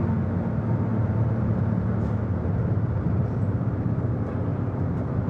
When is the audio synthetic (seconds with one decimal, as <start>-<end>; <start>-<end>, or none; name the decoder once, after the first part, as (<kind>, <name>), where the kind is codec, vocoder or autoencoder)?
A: 0.9-4.1 (vocoder, BigVGAN v2); 4.5-5.3